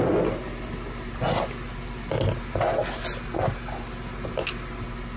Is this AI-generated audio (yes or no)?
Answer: no